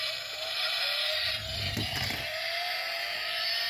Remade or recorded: recorded